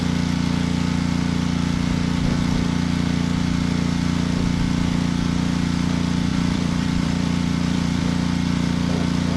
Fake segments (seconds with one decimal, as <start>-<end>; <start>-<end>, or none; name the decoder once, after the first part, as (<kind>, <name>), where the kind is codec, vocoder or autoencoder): 6.3-8.0 (vocoder, BigVGAN v2)